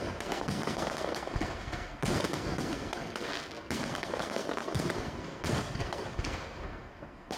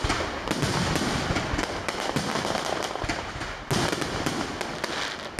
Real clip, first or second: second